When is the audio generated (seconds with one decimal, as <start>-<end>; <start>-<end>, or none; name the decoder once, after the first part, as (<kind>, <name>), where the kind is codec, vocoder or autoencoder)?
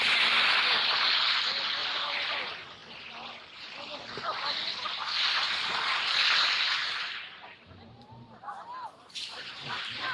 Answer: 1.8-2.3 (vocoder, BigVGAN v2); 6.8-10.1